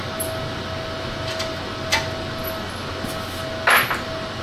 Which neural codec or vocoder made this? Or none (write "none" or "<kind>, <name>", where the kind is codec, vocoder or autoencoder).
none